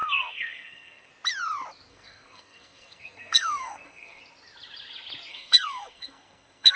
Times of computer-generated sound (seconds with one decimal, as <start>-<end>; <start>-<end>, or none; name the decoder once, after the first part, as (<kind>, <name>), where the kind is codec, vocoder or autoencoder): 0.0-1.1 (codec, SNAC); 1.9-4.2; 5.3-6.8

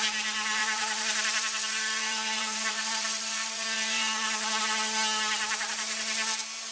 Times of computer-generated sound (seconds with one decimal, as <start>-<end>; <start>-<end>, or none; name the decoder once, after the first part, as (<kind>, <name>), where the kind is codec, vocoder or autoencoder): 0.6-4.6 (vocoder, Vocos)

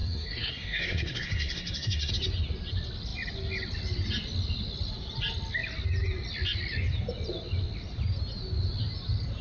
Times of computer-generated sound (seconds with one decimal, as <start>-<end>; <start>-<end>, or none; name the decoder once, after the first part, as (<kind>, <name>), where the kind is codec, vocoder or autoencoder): 0.0-2.1 (codec, SNAC)

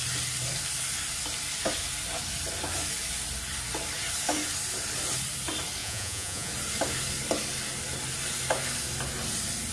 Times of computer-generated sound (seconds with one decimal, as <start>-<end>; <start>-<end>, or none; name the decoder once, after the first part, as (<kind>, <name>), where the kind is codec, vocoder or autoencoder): 5.8-6.5 (vocoder, Vocos)

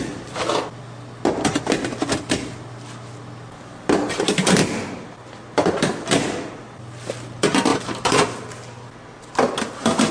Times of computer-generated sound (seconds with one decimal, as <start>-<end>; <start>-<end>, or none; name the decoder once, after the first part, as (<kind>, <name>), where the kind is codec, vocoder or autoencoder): none

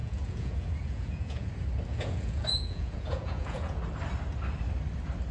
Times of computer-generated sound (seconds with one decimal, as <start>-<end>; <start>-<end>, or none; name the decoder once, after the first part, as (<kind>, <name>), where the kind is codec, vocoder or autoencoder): 0.0-1.5 (vocoder, Vocos); 1.9-3.8